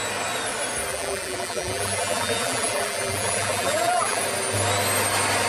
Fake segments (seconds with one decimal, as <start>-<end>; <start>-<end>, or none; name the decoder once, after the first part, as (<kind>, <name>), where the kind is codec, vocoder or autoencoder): 0.9-4.2 (vocoder, BigVGAN v2)